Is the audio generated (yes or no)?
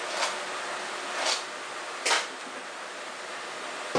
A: no